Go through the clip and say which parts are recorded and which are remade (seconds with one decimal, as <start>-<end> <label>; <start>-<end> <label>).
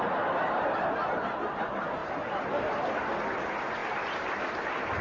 0.0-5.0 recorded